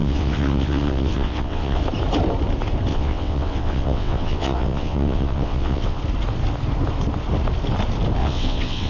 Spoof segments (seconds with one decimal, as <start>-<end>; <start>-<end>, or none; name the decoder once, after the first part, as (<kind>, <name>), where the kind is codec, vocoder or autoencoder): 0.0-1.8 (vocoder, WaveNeXt); 2.9-6.0; 8.2-8.9

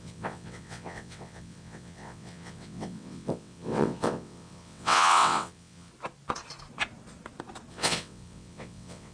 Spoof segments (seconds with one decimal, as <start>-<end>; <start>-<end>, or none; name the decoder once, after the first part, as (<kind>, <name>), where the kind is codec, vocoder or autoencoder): 0.0-5.9 (vocoder, WaveNeXt); 7.7-9.1

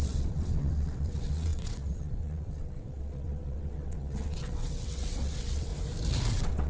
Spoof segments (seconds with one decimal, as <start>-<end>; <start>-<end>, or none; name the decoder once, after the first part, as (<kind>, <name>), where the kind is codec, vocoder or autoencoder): 0.0-5.7 (vocoder, WaveNeXt); 6.3-6.7

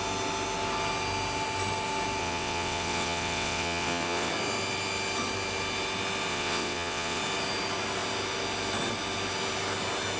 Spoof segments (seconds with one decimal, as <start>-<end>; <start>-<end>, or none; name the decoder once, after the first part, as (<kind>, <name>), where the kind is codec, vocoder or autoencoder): 2.2-4.3 (vocoder, WaveNeXt); 6.3-7.2

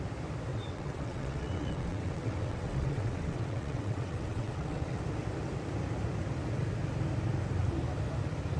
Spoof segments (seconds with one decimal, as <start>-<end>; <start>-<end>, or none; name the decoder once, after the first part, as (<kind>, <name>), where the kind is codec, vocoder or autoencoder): 0.5-5.0 (vocoder, WaveNeXt)

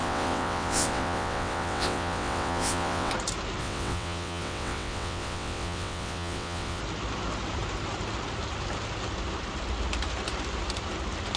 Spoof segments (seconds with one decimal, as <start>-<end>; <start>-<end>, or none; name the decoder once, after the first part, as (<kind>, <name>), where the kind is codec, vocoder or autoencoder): 0.0-3.1 (vocoder, WaveNeXt); 3.6-6.8

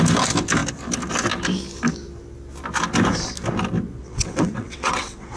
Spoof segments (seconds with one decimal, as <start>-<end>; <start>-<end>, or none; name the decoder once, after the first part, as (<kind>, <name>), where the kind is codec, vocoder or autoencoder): 4.0-5.4 (vocoder, WaveNeXt)